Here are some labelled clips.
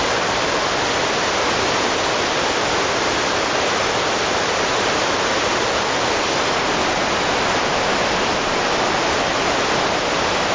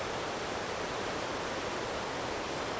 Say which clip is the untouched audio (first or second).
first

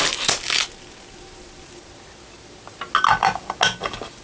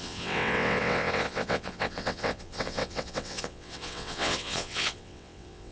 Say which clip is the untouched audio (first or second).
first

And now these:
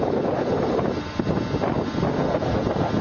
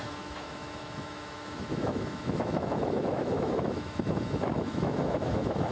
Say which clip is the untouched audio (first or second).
first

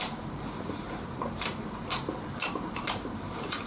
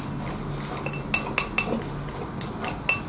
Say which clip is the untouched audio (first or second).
second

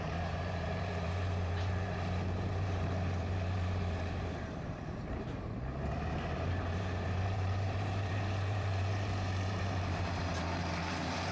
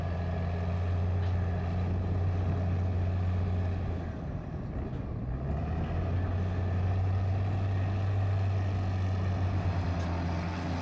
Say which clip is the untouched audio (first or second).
second